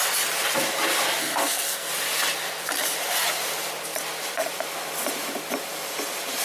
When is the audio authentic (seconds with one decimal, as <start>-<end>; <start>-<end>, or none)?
0.0-1.2; 1.9-6.4